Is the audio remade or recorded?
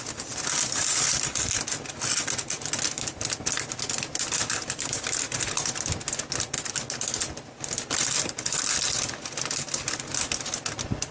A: recorded